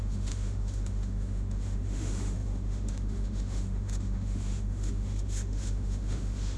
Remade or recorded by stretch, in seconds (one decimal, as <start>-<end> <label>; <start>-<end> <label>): 0.0-6.6 remade